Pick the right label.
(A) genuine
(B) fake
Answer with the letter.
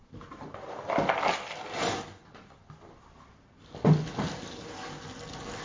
A